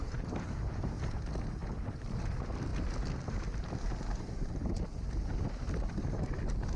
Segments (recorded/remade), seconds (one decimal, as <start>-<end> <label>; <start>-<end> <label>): 0.0-6.8 recorded